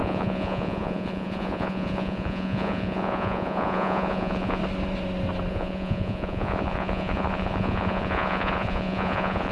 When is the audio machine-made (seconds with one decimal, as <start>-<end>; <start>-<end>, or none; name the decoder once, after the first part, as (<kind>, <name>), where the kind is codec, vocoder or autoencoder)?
0.0-4.6 (vocoder, Vocos); 5.5-9.5